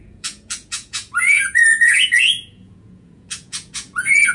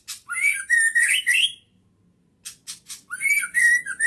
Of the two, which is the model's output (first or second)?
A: first